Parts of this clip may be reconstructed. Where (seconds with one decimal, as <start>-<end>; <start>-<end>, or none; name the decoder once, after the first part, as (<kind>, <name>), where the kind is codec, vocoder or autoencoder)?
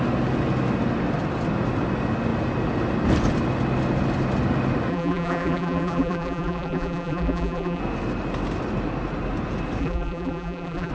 4.9-7.8 (vocoder, BigVGAN v2); 9.8-10.9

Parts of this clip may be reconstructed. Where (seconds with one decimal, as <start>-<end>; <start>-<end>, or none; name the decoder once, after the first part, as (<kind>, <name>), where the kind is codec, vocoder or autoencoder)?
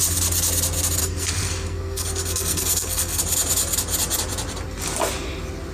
1.0-3.2 (codec, SNAC)